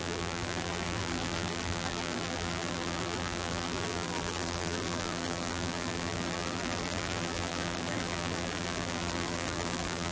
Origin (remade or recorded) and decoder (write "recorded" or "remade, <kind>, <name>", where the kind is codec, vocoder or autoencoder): remade, vocoder, BigVGAN v2